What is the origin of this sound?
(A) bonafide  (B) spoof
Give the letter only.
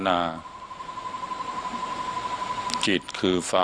A